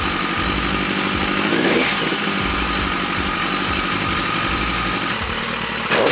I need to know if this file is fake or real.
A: real